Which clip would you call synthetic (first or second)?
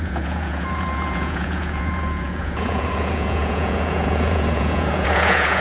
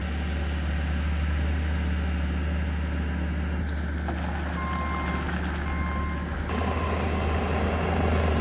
first